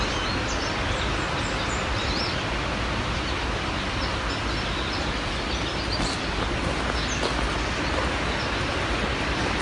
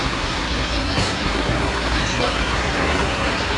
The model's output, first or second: second